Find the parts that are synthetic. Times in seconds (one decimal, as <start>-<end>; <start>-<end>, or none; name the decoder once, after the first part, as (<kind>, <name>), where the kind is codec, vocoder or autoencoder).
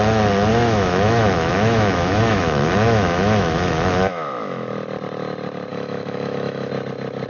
0.5-4.7 (autoencoder, DAC-VAE); 5.7-6.7